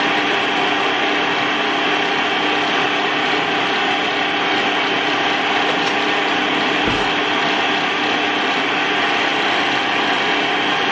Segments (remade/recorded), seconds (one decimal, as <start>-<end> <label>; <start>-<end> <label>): 0.0-10.9 recorded